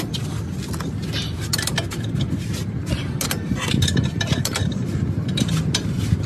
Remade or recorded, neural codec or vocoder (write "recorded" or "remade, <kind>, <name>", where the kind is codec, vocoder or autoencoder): recorded